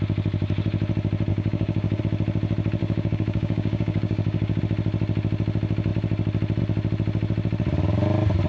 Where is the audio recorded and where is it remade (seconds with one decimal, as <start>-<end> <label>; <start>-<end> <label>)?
0.0-1.3 recorded; 1.3-2.0 remade; 2.0-2.8 recorded; 2.8-4.6 remade; 4.6-8.5 recorded

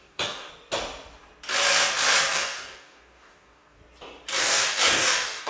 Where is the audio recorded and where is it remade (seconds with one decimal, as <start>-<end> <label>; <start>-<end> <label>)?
0.0-0.5 remade; 0.5-2.3 recorded; 2.3-3.8 remade; 3.8-4.4 recorded; 4.4-5.5 remade

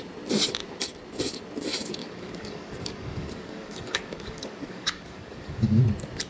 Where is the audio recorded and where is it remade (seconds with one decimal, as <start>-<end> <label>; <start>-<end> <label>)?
0.0-2.0 recorded; 2.0-5.8 remade; 5.8-6.3 recorded

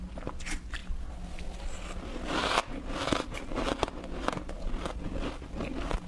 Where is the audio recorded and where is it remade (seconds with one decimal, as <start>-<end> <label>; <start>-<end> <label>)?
0.0-6.1 recorded

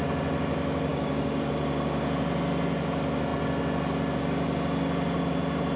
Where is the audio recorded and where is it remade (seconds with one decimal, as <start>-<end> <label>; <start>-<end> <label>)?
0.0-0.9 recorded; 0.9-1.5 remade; 1.5-5.8 recorded